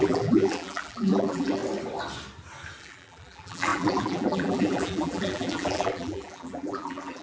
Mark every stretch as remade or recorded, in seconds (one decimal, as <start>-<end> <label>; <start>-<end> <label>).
0.0-1.6 remade; 1.6-2.8 recorded; 2.8-7.2 remade